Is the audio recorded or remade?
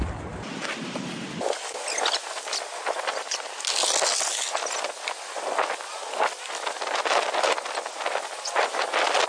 recorded